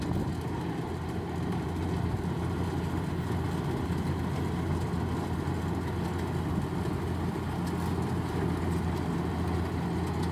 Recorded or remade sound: recorded